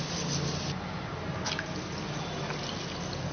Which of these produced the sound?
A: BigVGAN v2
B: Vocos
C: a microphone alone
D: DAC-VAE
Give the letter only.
C